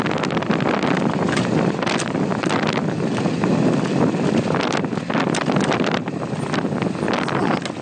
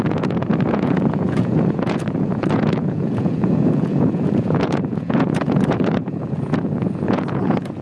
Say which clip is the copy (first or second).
second